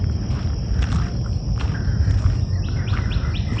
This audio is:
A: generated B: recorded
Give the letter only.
B